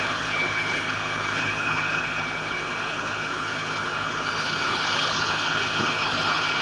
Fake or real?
fake